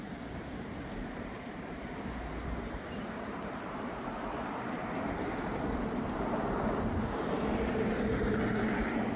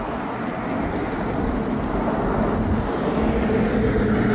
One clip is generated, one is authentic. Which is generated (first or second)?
first